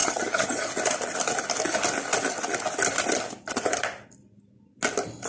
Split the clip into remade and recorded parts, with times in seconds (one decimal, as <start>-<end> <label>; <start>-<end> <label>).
0.0-0.7 remade; 0.7-5.3 recorded